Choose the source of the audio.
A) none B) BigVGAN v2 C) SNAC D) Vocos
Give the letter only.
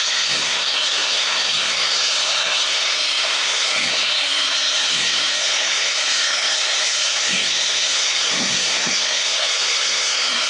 C